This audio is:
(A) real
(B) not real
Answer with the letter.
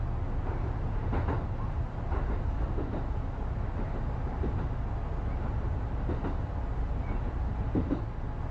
A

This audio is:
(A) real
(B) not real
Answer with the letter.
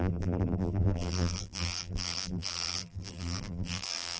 B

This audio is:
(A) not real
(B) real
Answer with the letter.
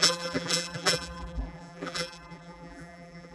A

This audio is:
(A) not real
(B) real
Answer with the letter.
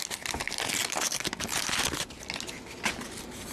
B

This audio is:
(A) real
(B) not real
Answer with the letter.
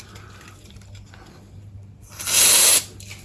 A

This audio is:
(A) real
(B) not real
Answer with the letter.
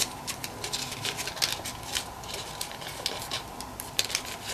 A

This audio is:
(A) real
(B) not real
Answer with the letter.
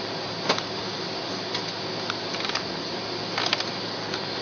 A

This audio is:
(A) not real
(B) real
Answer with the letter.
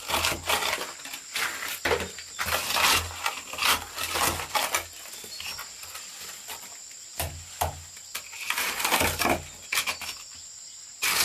B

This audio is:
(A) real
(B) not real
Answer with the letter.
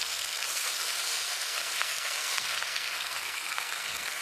B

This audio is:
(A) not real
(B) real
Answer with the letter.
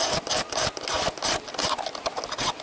B